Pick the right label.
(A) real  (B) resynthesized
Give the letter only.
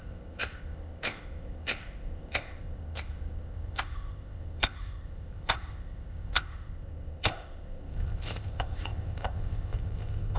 B